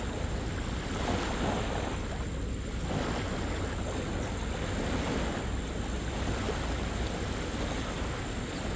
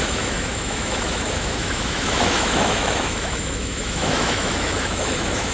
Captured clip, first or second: first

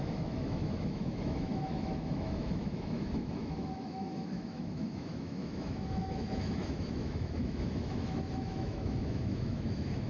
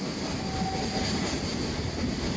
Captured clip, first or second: second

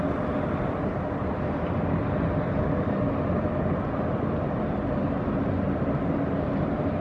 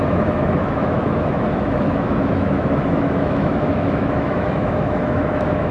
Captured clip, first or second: first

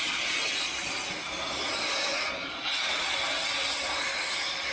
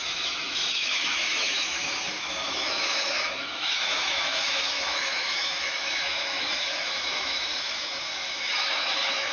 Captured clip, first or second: first